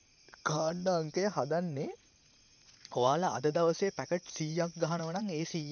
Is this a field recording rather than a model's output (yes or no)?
no